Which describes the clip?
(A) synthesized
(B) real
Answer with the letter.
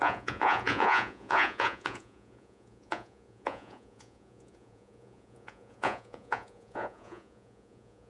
A